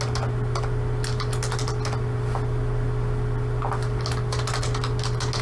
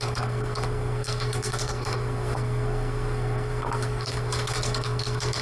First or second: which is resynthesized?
second